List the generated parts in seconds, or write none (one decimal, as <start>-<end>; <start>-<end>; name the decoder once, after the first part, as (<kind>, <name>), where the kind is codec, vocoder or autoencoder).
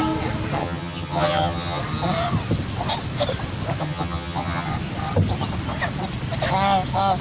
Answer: 0.6-1.8 (vocoder, HiFi-GAN); 3.8-4.7